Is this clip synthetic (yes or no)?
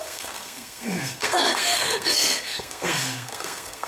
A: yes